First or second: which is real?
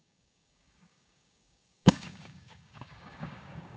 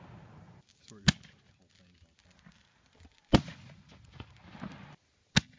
second